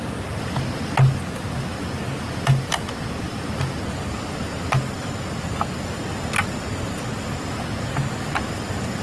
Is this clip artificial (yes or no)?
no